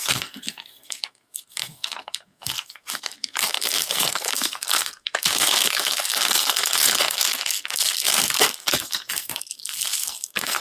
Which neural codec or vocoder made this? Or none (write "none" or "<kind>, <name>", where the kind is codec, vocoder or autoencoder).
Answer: codec, SNAC